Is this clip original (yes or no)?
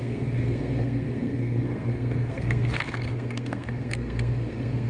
no